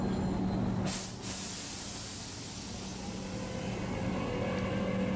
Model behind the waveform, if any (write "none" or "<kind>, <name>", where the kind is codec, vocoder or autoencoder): none